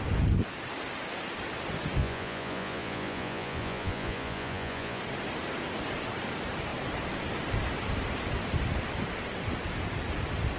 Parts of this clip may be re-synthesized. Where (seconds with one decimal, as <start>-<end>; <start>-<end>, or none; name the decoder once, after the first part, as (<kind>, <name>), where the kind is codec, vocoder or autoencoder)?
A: 2.0-5.0 (vocoder, Vocos)